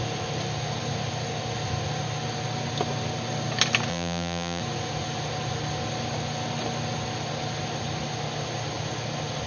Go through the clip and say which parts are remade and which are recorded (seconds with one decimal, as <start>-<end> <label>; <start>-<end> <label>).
0.0-3.9 recorded; 3.9-4.6 remade; 4.6-9.5 recorded

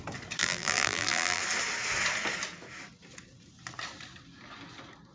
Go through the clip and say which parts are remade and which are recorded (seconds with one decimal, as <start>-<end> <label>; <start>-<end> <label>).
0.0-0.4 recorded; 0.4-1.4 remade; 1.4-5.1 recorded

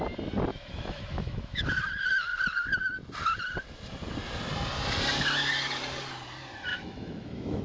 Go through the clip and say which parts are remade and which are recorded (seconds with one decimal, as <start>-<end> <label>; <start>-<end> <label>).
0.0-0.5 recorded; 0.5-1.8 remade; 1.8-6.7 recorded; 6.7-7.6 remade

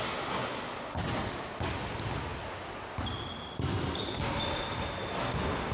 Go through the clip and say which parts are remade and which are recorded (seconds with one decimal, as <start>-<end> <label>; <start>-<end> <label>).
0.0-5.7 recorded

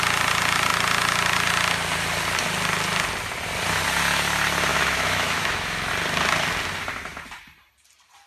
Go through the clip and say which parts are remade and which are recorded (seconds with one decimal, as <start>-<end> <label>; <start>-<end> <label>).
0.0-4.7 recorded; 4.7-5.9 remade; 5.9-8.3 recorded

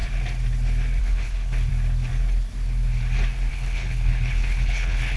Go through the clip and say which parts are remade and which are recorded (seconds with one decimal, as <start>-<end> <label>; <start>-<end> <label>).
0.0-1.0 recorded; 1.0-1.7 remade; 1.7-3.5 recorded; 3.5-5.2 remade